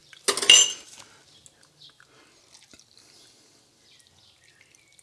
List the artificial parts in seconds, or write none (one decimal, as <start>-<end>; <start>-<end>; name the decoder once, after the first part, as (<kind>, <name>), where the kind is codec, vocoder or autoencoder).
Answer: none